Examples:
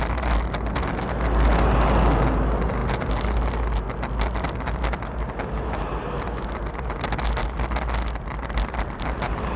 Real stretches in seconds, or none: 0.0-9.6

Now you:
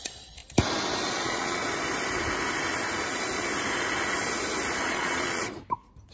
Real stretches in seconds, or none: 0.4-1.1; 1.6-4.8; 5.4-6.1

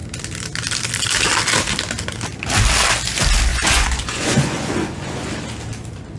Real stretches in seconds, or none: 0.0-3.5; 5.3-6.2

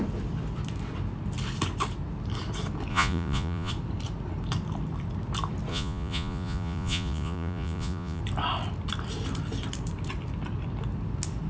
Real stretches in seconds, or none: 0.0-2.9; 3.7-5.7; 8.2-11.5

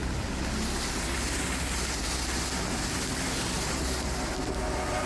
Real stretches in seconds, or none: 0.0-5.1

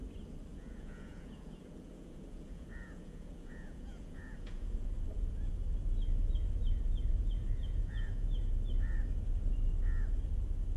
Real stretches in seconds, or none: 0.0-0.5; 5.5-7.2; 8.4-10.8

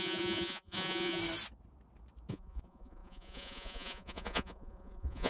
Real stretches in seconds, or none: 1.2-2.3